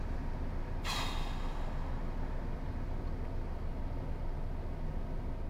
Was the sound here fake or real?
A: real